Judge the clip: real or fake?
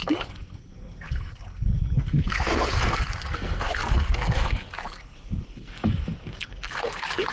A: fake